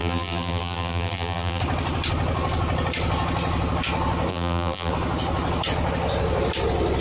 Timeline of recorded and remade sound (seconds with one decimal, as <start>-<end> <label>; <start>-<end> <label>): 0.0-1.6 remade; 1.6-4.3 recorded; 4.3-4.9 remade; 4.9-7.0 recorded